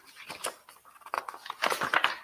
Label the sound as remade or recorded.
recorded